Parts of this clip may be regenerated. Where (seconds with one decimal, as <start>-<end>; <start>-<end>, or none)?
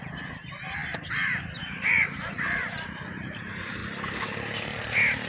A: 0.0-3.8